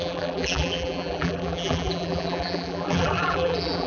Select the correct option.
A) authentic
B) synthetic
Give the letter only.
B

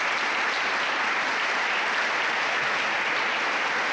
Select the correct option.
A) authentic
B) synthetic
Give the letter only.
A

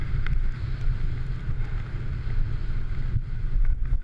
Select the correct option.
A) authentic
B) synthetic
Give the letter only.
A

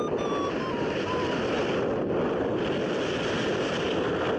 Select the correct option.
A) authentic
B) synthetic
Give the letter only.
A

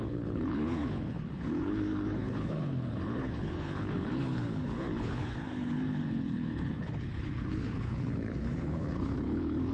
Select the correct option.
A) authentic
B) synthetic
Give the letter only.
B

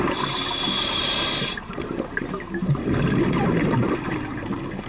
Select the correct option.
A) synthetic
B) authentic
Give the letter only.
B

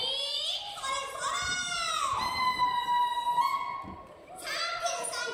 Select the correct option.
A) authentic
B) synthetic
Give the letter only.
A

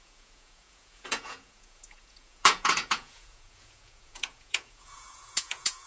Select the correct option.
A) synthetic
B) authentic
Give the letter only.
A